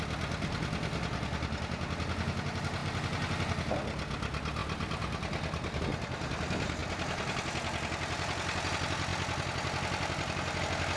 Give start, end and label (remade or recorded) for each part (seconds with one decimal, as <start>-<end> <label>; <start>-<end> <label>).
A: 0.0-11.0 recorded